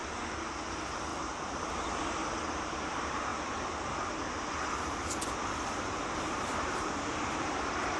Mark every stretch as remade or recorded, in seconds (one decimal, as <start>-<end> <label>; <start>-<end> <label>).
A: 0.0-0.6 recorded; 0.6-1.1 remade; 1.1-2.6 recorded; 2.6-3.3 remade; 3.3-6.2 recorded; 6.2-8.0 remade